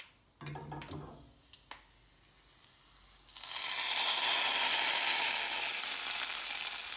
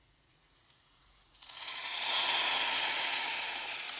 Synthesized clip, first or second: second